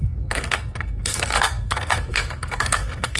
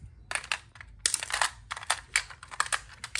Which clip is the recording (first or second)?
second